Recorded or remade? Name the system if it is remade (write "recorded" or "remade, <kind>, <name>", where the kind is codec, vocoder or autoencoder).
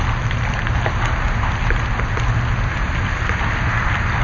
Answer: recorded